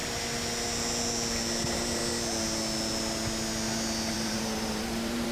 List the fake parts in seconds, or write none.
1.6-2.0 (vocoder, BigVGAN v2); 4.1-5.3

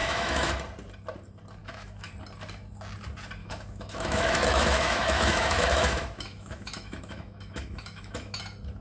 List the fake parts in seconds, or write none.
0.0-0.5 (autoencoder, DAC-VAE); 1.6-2.1; 3.4-8.4

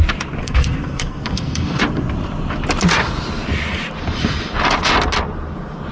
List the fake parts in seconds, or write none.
0.4-1.8 (codec, SNAC)